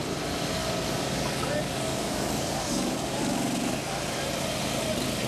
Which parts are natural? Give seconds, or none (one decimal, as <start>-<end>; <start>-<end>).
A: 0.0-0.6; 3.8-5.3